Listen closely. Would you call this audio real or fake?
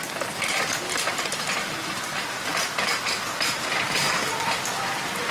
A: real